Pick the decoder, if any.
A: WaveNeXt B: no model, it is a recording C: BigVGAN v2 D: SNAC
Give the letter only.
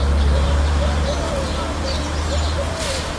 C